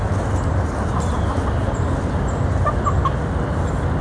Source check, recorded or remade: recorded